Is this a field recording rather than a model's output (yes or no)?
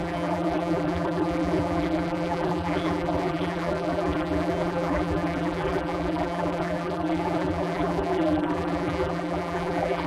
no